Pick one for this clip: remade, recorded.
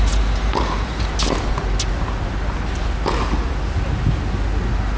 recorded